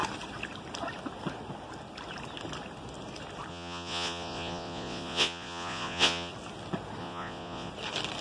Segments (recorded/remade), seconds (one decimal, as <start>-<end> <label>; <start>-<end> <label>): 0.0-3.5 recorded; 3.5-6.3 remade; 6.3-7.0 recorded; 7.0-7.7 remade; 7.7-8.2 recorded